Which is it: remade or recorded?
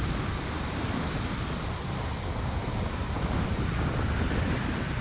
recorded